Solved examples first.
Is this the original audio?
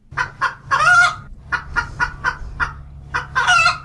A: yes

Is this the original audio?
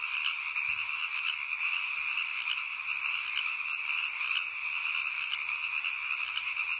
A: yes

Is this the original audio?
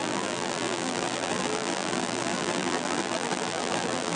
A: no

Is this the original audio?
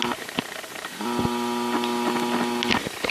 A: yes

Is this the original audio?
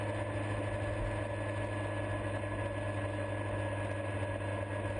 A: yes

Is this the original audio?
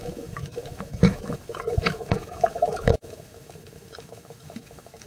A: no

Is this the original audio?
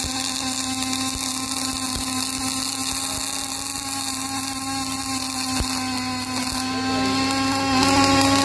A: yes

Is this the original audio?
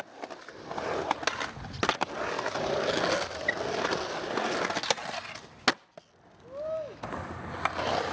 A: yes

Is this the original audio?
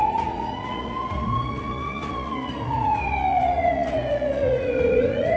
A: no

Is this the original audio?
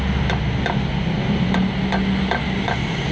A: yes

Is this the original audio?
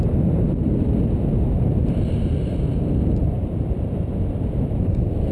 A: yes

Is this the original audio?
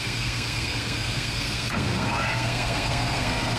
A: no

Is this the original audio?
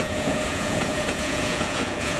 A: no